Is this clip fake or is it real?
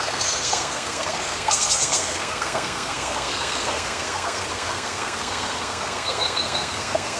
fake